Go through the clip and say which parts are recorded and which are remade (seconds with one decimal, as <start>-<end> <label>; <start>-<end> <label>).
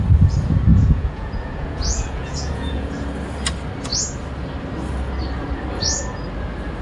0.0-0.7 recorded; 0.7-2.9 remade; 2.9-6.8 recorded